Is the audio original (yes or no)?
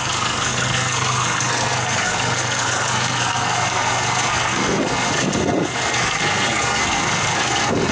no